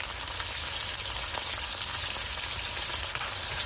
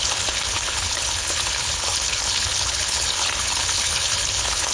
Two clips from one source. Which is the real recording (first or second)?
first